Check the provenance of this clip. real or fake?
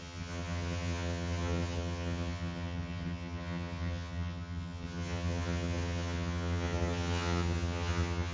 fake